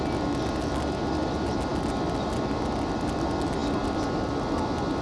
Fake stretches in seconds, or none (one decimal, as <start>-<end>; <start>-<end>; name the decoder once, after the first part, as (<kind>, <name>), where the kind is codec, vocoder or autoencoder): none